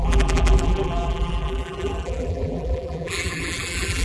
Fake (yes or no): yes